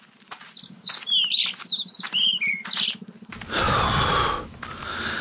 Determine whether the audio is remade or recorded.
recorded